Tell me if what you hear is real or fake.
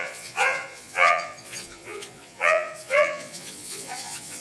fake